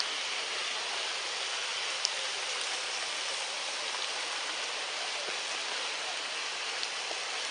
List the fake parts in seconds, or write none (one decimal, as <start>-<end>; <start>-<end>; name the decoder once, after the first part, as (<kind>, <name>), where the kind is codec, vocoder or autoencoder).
none